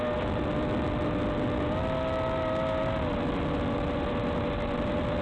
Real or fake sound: real